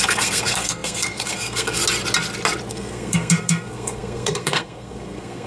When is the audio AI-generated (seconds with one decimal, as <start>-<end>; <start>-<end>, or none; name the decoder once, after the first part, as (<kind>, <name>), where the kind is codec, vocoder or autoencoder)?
0.0-1.8 (codec, SNAC); 2.7-5.5